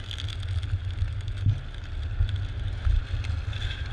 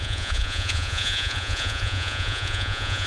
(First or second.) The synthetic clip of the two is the second